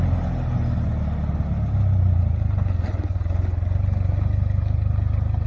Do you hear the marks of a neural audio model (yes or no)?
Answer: no